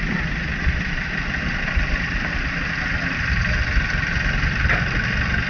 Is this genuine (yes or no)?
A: yes